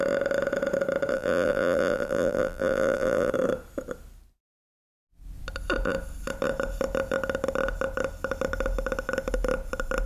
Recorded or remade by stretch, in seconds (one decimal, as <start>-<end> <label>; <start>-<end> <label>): 0.0-1.1 recorded; 1.1-3.3 remade; 3.3-10.1 recorded